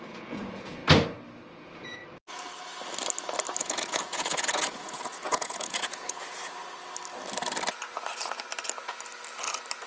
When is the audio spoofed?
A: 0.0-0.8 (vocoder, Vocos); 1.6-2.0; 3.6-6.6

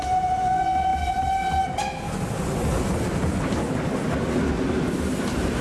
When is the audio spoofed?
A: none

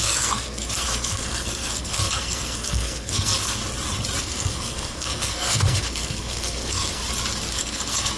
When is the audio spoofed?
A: 0.0-3.6 (codec, SNAC); 4.2-7.0; 7.5-8.2

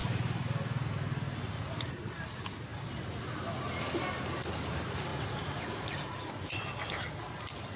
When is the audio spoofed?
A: 5.1-6.3 (vocoder, BigVGAN v2)